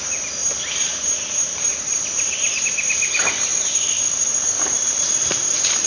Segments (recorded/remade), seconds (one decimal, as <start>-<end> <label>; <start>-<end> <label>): 0.0-5.9 recorded